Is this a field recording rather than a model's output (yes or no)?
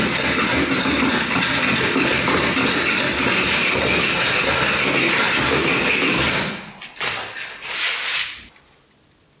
yes